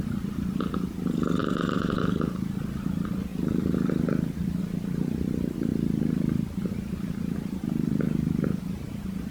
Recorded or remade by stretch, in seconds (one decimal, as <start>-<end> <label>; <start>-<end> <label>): 0.0-1.4 recorded; 1.4-2.0 remade; 2.0-9.3 recorded